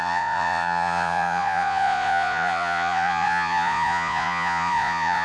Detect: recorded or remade remade